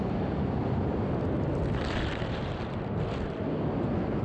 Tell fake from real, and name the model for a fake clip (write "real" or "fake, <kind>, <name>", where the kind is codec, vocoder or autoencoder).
real